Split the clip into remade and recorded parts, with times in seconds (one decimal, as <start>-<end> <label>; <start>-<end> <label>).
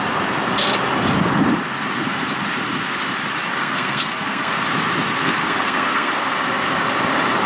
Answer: 0.0-3.6 recorded; 3.6-4.5 remade; 4.5-5.4 recorded; 5.4-6.1 remade; 6.1-7.5 recorded